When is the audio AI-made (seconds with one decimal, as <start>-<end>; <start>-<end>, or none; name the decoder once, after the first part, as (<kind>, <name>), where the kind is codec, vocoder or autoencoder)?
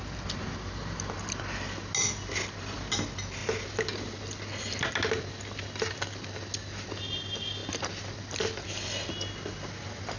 none